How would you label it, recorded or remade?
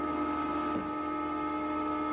recorded